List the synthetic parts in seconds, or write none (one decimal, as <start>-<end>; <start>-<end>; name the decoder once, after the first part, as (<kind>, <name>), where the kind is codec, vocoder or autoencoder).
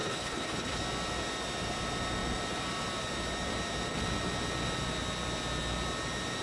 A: 0.0-0.8 (codec, HILCodec)